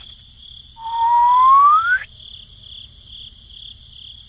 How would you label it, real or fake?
real